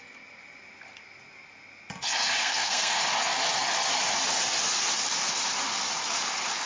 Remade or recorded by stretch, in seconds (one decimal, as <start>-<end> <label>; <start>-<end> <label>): 0.0-2.4 recorded; 2.4-3.0 remade; 3.0-6.7 recorded